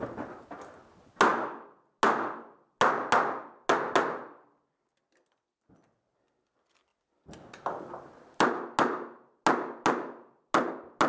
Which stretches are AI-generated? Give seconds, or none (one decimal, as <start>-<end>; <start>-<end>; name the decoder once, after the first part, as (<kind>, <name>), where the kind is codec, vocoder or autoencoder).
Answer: none